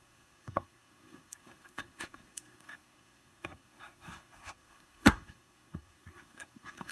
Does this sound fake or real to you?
fake